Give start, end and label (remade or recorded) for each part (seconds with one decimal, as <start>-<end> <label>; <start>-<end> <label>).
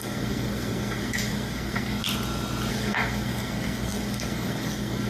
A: 0.0-2.0 remade; 2.0-2.7 recorded; 2.7-5.1 remade